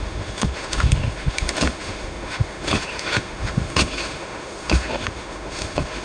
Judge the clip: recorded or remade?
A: remade